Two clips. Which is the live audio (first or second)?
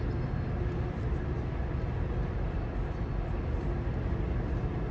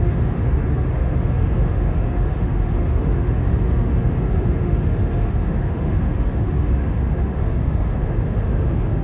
first